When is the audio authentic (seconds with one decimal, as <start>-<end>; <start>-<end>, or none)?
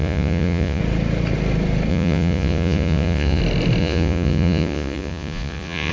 0.8-1.9; 3.4-3.8